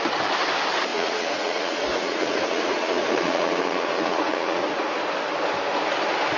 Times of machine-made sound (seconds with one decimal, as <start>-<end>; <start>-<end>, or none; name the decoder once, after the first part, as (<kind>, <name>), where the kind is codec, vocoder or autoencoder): 0.9-4.7 (vocoder, Vocos)